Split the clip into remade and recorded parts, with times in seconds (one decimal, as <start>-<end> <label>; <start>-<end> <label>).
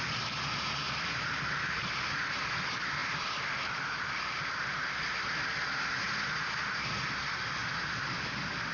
0.0-8.7 recorded